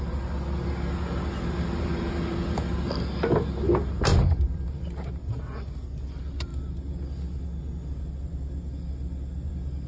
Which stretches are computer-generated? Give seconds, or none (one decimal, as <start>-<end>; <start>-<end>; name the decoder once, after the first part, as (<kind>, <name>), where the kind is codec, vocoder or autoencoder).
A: none